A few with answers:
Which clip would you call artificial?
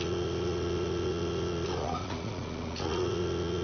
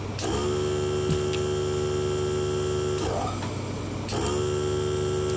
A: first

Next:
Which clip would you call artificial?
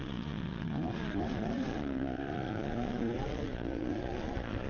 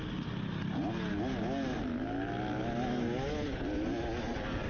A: first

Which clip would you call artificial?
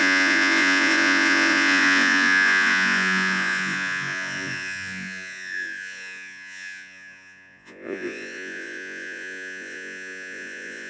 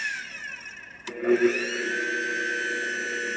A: first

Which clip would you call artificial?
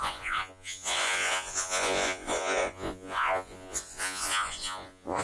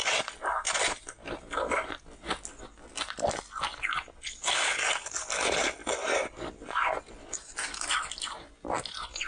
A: first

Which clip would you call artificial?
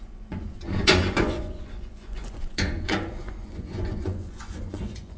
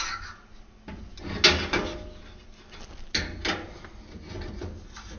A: first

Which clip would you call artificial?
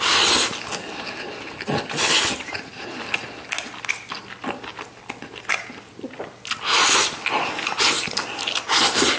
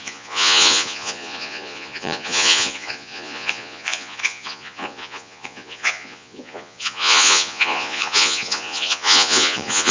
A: second